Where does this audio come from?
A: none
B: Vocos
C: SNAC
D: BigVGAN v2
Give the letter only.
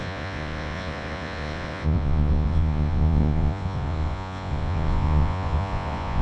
B